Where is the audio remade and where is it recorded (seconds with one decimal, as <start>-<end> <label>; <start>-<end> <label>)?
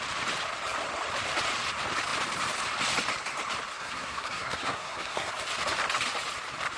0.0-3.7 recorded; 3.7-5.3 remade; 5.3-6.8 recorded